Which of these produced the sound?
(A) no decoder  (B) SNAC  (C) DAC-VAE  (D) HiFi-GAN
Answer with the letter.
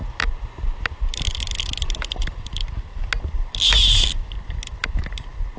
A